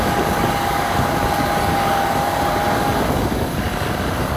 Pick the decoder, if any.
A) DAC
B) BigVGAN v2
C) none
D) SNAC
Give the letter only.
A